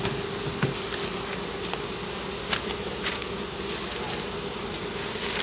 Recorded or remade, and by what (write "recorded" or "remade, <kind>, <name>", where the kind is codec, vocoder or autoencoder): recorded